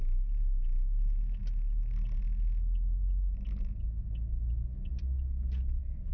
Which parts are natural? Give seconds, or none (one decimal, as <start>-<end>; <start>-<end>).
0.0-6.1